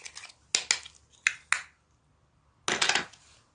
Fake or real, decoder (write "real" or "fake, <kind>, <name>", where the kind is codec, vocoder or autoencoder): real